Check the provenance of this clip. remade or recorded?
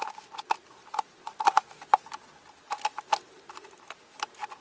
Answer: recorded